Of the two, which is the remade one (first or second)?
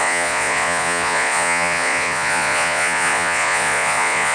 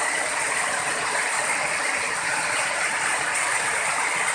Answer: first